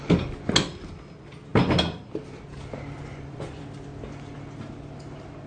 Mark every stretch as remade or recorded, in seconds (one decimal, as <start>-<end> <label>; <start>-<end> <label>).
0.0-3.1 recorded; 3.1-3.6 remade; 3.6-5.5 recorded